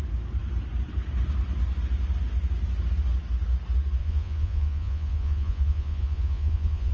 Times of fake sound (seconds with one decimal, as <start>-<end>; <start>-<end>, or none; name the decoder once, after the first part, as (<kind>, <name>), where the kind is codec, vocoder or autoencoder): 4.0-6.9 (vocoder, Vocos)